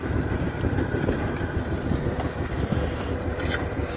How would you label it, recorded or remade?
recorded